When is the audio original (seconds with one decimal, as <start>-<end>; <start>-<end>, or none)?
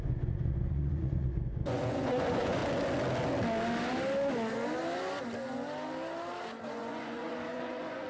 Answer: 2.6-6.7